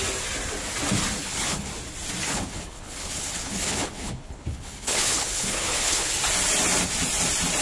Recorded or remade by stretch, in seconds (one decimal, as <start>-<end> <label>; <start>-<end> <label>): 0.0-1.2 recorded; 1.2-1.7 remade; 1.7-2.2 recorded; 2.2-6.1 remade; 6.1-7.6 recorded